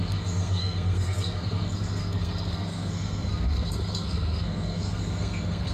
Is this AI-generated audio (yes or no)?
yes